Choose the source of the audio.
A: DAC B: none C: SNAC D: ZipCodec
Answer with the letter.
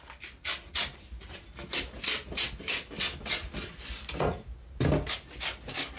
B